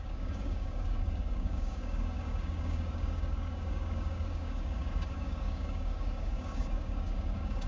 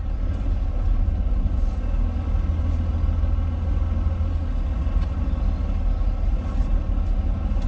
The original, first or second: second